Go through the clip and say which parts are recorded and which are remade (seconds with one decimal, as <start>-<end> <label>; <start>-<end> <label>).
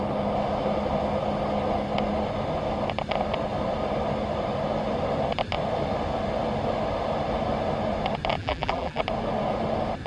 0.0-8.4 recorded; 8.4-9.0 remade; 9.0-10.1 recorded